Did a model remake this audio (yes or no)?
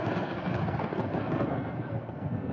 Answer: yes